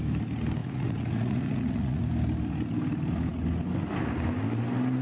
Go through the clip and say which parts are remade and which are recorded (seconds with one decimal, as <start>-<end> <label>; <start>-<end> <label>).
0.0-0.6 recorded; 0.6-2.0 remade; 2.0-5.0 recorded